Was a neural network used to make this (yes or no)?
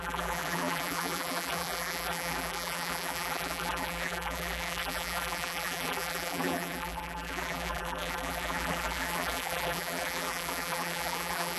yes